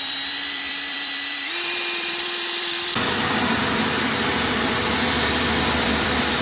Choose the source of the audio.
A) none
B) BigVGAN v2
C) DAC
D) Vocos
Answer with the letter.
B